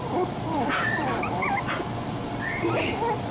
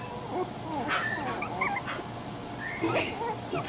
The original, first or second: second